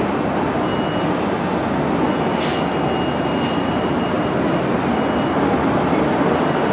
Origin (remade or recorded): recorded